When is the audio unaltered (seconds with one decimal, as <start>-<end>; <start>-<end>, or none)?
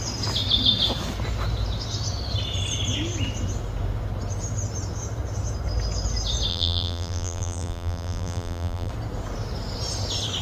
0.0-6.5; 8.9-10.4